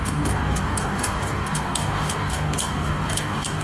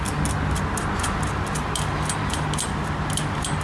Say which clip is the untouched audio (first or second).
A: second